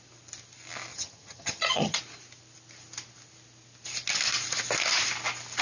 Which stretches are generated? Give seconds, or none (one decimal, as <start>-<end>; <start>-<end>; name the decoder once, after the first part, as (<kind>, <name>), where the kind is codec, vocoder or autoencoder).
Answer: 0.9-2.0 (vocoder, HiFi-GAN)